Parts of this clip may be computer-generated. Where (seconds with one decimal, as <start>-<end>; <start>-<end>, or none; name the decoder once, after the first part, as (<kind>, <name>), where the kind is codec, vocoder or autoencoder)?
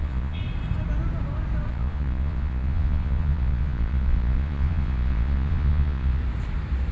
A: 0.0-0.4 (vocoder, Vocos); 1.7-6.2